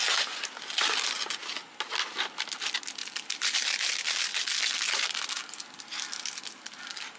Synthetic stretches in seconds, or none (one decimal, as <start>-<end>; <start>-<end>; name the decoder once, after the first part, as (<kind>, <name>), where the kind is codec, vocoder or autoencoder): 3.0-3.9 (vocoder, BigVGAN v2)